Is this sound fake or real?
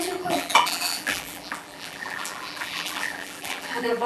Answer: fake